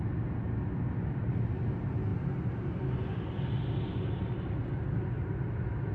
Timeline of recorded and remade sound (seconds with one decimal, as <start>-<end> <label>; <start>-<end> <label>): 0.0-5.9 recorded